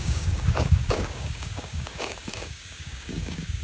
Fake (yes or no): yes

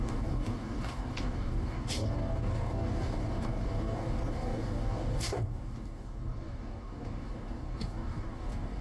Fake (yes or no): yes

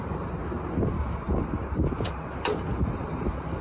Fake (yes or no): no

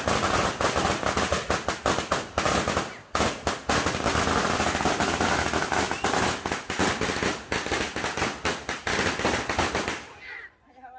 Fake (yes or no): no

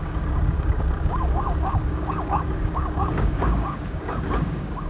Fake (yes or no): yes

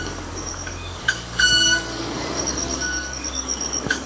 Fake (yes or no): yes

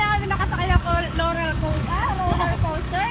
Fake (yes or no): yes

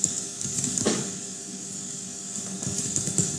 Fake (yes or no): yes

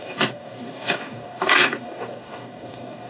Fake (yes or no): yes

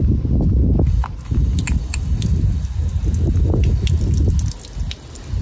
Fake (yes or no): no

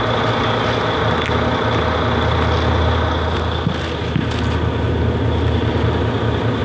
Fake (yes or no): no